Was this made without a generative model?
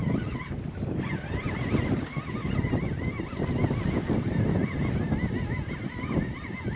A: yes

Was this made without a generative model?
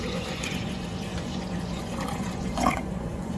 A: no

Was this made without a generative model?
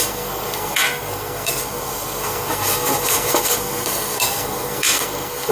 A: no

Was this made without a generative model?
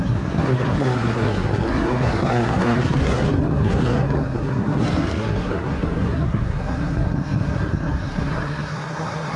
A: no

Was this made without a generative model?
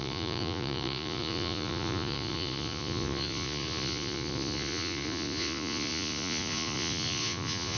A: no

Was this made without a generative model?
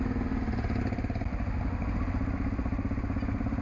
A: yes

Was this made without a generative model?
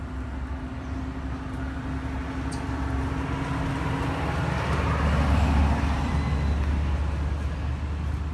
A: yes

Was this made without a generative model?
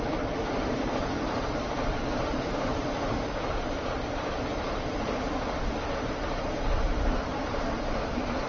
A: no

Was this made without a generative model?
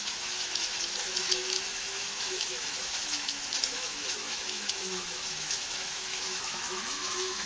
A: no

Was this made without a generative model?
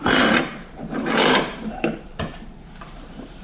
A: no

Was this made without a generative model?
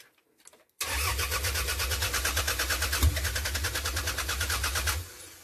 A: yes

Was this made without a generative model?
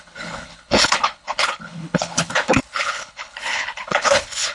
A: no